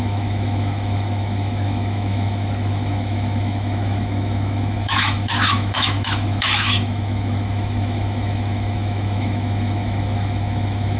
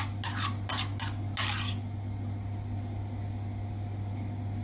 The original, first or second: second